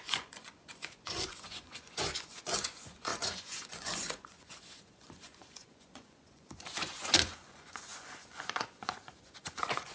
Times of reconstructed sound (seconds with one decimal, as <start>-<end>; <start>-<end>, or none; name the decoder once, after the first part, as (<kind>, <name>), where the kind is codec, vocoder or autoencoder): 0.0-9.9 (vocoder, Vocos)